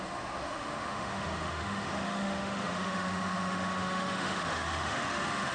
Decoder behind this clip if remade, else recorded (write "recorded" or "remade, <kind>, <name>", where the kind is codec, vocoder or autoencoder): remade, autoencoder, DAC-VAE